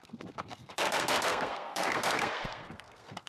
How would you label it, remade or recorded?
remade